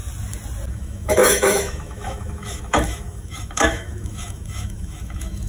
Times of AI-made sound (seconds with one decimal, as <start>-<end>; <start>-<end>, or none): 0.7-5.5